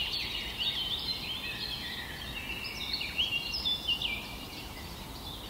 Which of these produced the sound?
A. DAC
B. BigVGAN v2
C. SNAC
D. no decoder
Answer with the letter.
D